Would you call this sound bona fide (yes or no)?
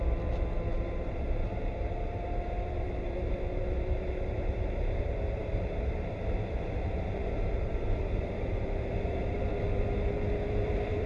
no